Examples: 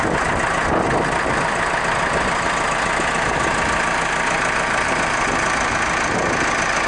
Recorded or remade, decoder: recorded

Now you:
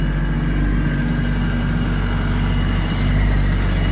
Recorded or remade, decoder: recorded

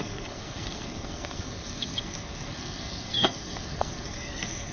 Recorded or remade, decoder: remade, codec, SNAC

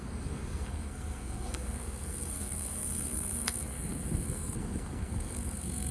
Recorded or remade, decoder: remade, codec, SNAC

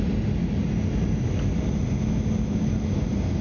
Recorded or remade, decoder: recorded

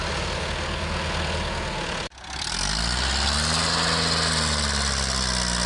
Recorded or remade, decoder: recorded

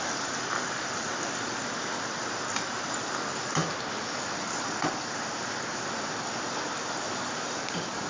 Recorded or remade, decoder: recorded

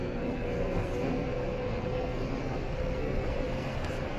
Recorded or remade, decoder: remade, codec, SNAC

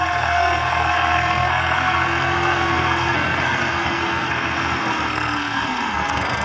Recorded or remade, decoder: remade, codec, SNAC